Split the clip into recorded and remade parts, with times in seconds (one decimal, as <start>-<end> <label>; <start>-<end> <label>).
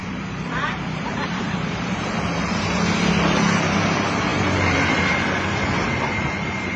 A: 0.0-6.8 remade